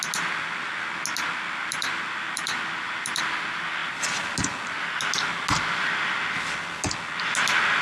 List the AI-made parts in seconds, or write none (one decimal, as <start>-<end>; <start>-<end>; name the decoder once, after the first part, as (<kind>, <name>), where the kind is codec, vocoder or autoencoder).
1.6-3.2 (vocoder, BigVGAN v2)